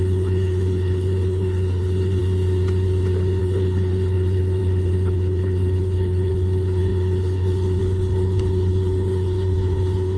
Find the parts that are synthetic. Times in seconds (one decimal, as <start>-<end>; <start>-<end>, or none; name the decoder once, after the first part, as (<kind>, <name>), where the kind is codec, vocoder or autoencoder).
0.0-2.2 (codec, HILCodec); 3.4-10.2